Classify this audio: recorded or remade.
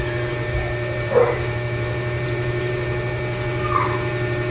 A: remade